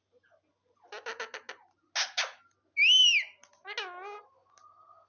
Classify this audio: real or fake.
real